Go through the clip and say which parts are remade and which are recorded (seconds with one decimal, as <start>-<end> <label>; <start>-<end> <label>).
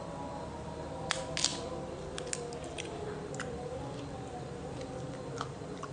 0.0-5.9 recorded